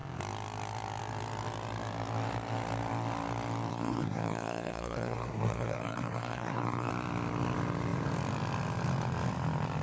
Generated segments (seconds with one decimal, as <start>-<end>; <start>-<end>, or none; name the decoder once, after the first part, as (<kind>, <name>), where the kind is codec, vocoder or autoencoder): 3.7-6.9 (codec, SNAC)